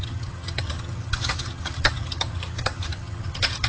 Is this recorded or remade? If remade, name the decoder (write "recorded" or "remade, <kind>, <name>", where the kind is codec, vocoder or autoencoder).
remade, vocoder, HiFi-GAN